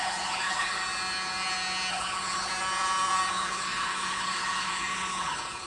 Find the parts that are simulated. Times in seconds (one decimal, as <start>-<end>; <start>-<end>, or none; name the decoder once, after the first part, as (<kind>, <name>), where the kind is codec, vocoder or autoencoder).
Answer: 0.0-0.8 (codec, HILCodec); 1.9-2.5; 3.3-5.7